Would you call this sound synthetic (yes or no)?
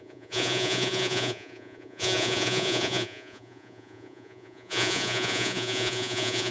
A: yes